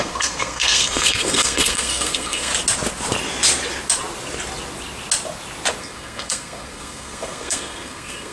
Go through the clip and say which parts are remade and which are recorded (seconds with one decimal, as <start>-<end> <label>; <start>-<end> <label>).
0.0-2.5 remade; 2.5-5.8 recorded; 5.8-8.3 remade